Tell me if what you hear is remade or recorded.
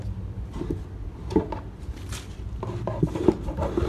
recorded